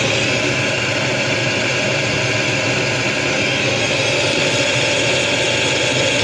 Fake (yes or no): no